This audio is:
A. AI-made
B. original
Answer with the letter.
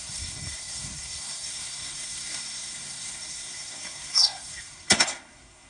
A